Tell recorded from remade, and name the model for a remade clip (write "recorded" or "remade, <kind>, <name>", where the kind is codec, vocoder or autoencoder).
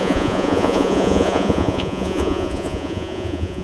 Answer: remade, vocoder, Vocos